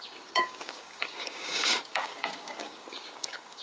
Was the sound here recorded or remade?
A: remade